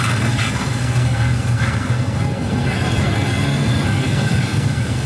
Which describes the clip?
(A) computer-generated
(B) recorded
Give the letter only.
A